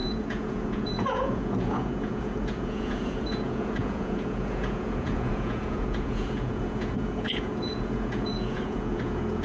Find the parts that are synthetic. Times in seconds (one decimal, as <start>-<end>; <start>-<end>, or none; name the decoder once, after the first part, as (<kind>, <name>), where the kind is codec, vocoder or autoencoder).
0.0-9.4 (vocoder, Vocos)